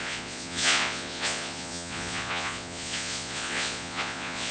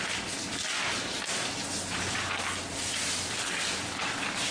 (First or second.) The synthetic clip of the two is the first